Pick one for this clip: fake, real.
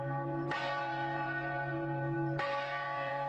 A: fake